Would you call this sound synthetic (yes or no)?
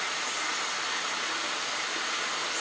no